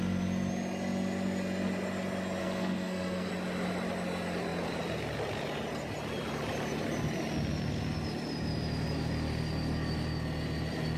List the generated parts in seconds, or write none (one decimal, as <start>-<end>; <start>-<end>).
2.4-3.3